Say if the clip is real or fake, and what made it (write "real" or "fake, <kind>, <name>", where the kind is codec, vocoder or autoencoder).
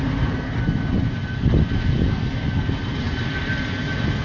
real